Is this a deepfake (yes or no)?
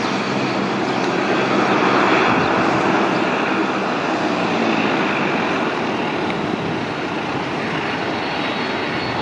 no